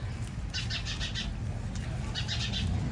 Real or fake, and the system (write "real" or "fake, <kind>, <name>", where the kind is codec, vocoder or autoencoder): real